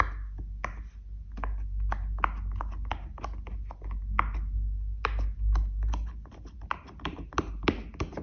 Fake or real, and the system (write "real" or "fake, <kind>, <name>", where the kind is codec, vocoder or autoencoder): real